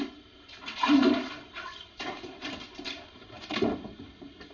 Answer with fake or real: fake